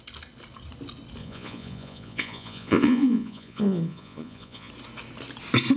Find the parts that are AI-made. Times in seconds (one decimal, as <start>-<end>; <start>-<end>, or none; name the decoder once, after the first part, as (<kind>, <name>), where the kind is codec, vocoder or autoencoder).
1.2-4.7 (vocoder, Vocos)

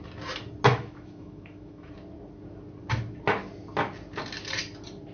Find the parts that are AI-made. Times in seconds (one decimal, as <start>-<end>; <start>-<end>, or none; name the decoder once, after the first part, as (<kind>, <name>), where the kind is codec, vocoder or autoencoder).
0.7-1.9 (autoencoder, DAC-VAE)

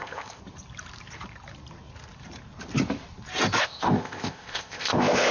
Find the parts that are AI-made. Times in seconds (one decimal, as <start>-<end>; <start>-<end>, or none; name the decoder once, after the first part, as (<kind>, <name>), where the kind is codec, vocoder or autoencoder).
0.0-0.4 (codec, ZipCodec); 3.6-5.3